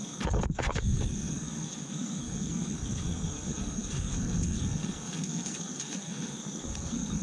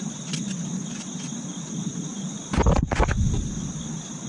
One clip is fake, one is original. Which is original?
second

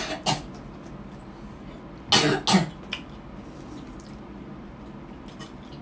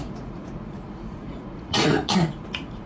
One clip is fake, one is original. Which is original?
first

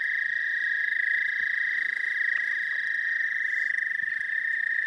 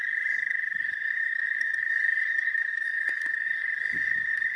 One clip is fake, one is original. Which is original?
first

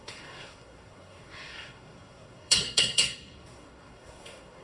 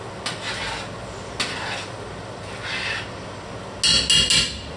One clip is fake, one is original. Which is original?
second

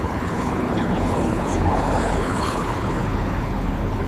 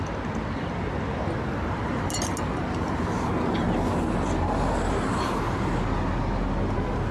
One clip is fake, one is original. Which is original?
second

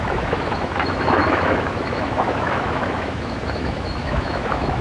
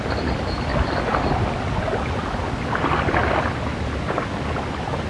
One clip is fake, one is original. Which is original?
second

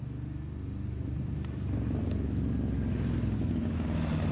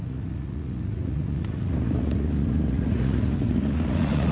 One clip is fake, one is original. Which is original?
first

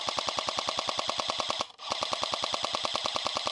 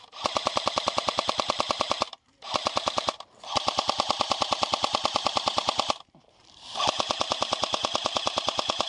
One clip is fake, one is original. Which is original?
first